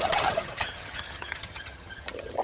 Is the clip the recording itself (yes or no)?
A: no